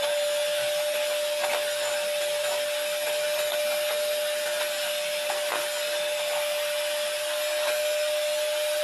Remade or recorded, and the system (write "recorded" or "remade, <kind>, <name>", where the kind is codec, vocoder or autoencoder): recorded